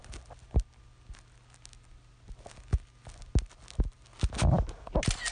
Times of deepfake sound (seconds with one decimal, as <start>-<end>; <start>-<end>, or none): none